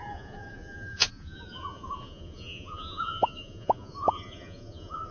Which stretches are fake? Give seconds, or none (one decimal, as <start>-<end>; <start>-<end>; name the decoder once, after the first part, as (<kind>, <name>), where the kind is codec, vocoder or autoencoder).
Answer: 0.0-5.1 (vocoder, Vocos)